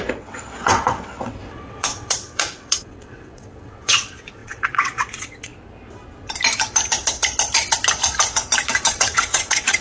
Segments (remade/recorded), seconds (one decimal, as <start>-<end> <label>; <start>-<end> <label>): 0.0-5.5 remade; 5.5-8.9 recorded; 8.9-9.8 remade